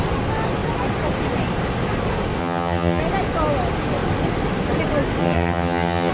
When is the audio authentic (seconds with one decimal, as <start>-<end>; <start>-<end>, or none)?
0.0-2.4; 3.0-5.2